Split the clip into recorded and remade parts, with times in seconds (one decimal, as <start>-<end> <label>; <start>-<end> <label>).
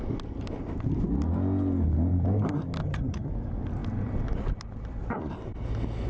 0.0-2.8 recorded; 2.8-3.3 remade; 3.3-6.1 recorded